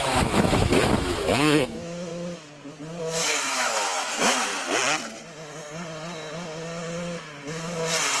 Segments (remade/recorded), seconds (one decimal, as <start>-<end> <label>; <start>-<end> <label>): 0.0-2.1 remade; 2.1-3.0 recorded; 3.0-4.5 remade; 4.5-8.2 recorded